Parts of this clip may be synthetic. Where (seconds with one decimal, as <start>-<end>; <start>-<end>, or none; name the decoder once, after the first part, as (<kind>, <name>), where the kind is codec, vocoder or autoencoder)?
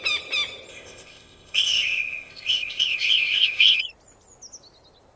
0.7-3.8 (codec, ZipCodec)